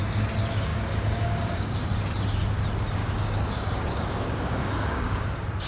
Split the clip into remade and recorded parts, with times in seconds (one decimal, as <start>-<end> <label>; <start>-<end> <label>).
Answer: 0.0-0.7 recorded; 0.7-2.0 remade; 2.0-3.0 recorded; 3.0-5.2 remade; 5.2-5.7 recorded